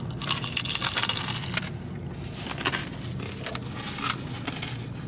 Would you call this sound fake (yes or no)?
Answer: no